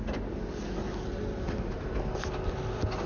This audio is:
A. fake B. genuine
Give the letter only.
B